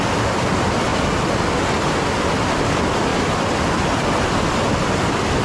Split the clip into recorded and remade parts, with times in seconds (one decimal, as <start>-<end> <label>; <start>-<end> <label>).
0.0-5.4 remade